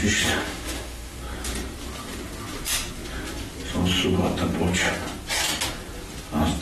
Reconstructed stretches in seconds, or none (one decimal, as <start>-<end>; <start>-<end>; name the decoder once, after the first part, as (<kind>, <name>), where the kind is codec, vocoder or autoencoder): 0.4-1.2 (autoencoder, DAC-VAE)

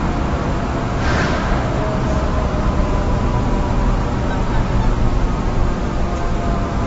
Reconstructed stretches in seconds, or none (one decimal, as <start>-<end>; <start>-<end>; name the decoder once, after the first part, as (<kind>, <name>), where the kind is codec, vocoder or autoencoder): 0.8-1.8 (autoencoder, DAC-VAE)

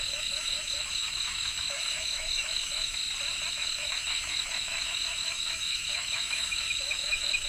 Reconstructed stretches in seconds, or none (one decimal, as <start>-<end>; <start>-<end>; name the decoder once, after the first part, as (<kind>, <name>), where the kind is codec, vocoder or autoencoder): 0.0-3.0 (autoencoder, DAC-VAE); 3.5-7.5

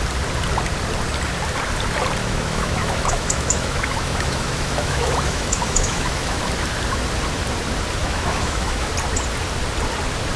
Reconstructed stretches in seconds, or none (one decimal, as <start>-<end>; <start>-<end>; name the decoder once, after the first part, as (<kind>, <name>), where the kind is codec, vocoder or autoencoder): 2.2-6.4 (autoencoder, DAC-VAE); 8.0-8.9

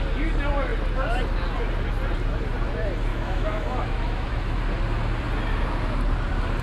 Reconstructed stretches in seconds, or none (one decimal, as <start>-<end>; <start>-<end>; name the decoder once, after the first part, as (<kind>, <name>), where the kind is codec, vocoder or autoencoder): 3.1-4.6 (autoencoder, DAC-VAE)

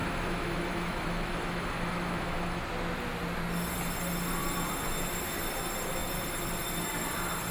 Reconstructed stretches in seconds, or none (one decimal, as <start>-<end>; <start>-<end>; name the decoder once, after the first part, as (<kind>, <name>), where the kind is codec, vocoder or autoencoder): 0.0-2.6 (autoencoder, DAC-VAE)

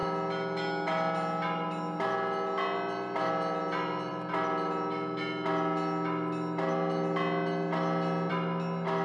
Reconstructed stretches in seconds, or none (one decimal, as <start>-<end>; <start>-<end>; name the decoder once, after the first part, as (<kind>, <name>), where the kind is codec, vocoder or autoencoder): none

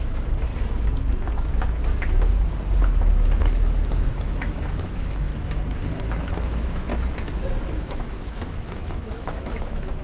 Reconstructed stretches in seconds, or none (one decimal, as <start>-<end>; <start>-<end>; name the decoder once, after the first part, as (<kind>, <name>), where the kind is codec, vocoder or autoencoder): 0.0-0.5 (autoencoder, DAC-VAE); 3.4-5.3; 5.9-6.9; 7.8-10.0